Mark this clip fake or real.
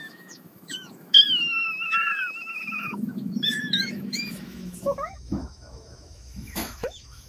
fake